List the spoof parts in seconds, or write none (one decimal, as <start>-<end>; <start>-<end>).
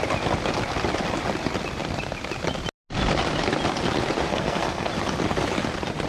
4.3-4.9